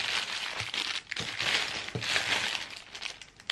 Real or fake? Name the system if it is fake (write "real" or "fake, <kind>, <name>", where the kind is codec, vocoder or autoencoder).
real